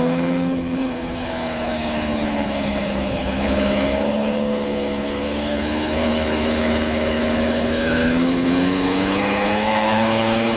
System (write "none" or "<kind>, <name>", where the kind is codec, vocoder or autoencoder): codec, HILCodec